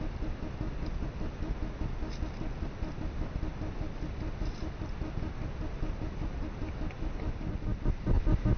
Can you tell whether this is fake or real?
real